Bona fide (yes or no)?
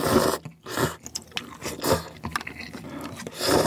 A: yes